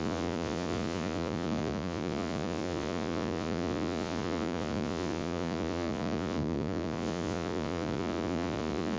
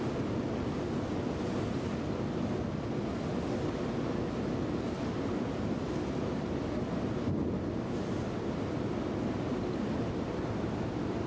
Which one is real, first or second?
second